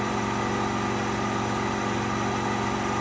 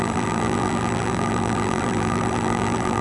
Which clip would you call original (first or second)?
first